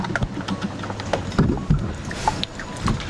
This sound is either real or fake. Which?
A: real